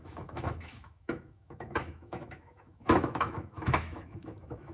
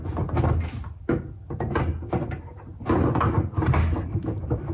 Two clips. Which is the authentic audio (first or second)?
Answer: second